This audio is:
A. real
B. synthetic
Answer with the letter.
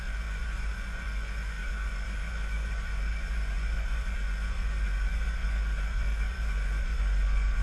B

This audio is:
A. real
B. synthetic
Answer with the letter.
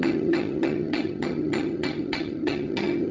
B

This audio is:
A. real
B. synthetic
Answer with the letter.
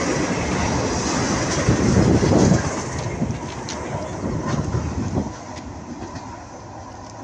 A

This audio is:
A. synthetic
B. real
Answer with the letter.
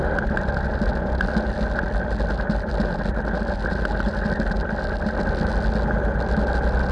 B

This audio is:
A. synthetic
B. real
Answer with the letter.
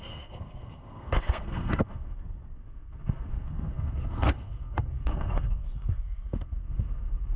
A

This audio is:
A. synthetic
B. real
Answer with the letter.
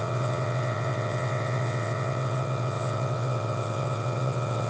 A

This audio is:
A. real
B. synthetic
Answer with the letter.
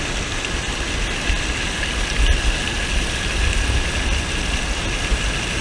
A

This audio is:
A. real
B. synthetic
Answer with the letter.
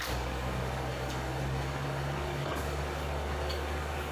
B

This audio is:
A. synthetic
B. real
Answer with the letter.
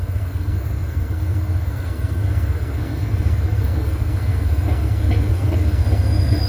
A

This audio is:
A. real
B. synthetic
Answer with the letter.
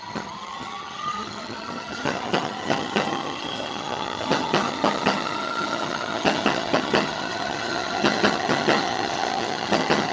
B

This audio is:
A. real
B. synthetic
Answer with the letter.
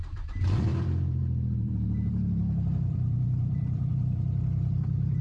B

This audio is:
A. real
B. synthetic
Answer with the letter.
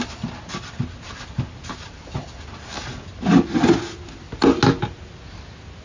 A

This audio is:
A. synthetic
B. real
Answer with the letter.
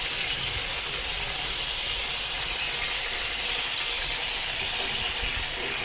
B